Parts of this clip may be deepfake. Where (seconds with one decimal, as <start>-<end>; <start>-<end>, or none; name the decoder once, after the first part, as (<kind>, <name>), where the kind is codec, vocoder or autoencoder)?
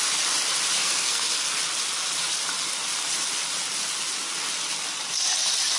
0.8-1.6 (codec, SNAC)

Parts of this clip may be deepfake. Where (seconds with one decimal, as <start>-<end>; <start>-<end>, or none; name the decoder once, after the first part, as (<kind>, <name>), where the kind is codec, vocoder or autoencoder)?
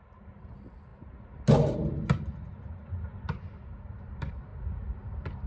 none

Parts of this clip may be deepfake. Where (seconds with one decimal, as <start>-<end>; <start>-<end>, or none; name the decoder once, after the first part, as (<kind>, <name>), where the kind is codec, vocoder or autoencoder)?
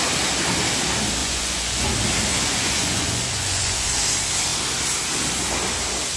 1.2-1.9 (vocoder, Vocos); 2.3-4.0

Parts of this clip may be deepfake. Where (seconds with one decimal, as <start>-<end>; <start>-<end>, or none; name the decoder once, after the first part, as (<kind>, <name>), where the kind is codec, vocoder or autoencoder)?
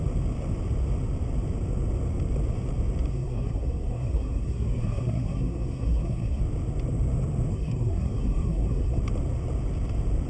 3.1-6.4 (codec, SNAC); 7.5-9.0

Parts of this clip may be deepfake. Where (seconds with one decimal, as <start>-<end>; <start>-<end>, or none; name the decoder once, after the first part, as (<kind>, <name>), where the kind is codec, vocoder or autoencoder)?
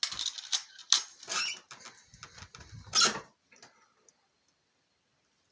none